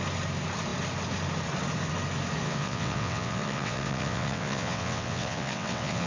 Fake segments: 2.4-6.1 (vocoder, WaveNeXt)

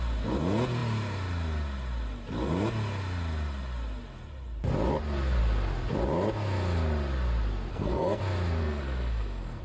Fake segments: 7.7-8.2 (codec, SNAC); 8.6-9.6

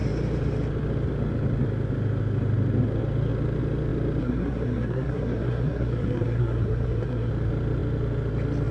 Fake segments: 4.2-7.3 (codec, SNAC)

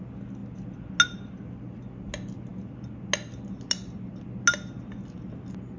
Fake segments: none

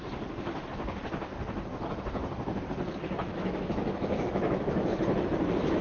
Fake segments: 3.2-5.1 (autoencoder, DAC-VAE)

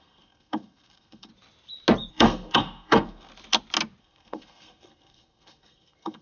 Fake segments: 0.0-1.3 (codec, SNAC); 2.1-3.3; 4.0-6.2

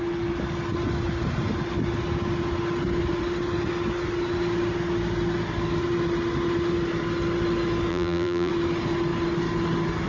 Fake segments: 7.9-8.5 (vocoder, BigVGAN v2)